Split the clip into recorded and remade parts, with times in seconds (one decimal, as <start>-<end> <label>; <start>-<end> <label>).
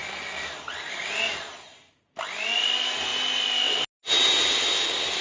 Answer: 0.0-2.5 remade; 2.5-5.2 recorded